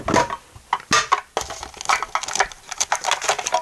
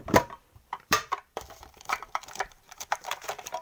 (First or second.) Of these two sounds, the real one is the first